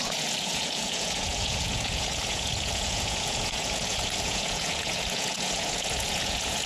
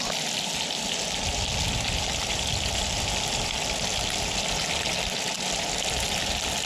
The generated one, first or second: first